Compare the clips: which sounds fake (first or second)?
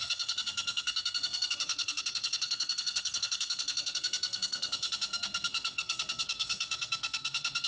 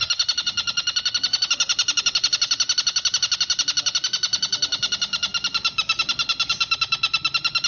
first